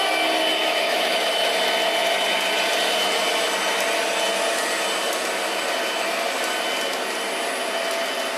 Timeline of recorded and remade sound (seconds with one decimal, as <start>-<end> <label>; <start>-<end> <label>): 0.0-0.6 recorded; 0.6-1.5 remade; 1.5-8.4 recorded